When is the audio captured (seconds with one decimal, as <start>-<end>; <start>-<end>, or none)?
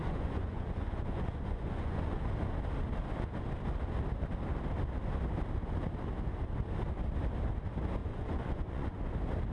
2.2-8.0; 9.0-9.5